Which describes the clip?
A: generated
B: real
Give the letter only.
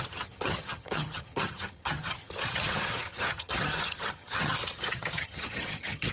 A